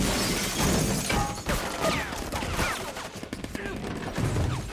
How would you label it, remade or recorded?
recorded